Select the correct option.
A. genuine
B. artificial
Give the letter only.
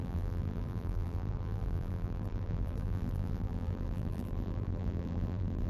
B